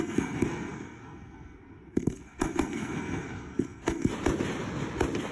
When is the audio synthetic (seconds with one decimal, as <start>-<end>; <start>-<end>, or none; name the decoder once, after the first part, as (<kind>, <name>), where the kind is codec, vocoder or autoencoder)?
0.0-4.1 (codec, SNAC)